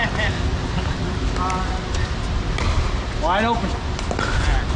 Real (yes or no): yes